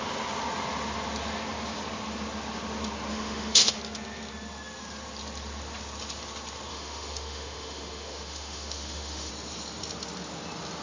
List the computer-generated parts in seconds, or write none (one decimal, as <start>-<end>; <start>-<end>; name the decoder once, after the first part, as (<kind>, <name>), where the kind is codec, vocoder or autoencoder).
3.1-3.8 (autoencoder, DAC-VAE); 6.7-9.3